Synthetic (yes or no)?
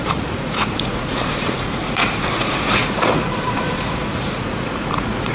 yes